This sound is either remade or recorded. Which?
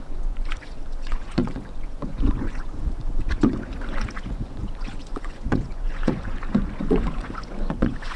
remade